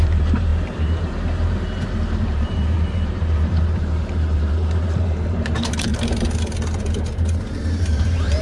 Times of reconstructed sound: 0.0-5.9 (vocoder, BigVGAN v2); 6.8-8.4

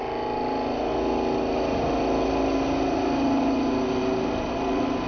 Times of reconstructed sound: none